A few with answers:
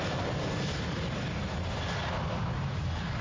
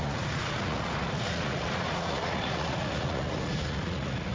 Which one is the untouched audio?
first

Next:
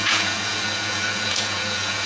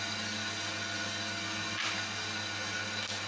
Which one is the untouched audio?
second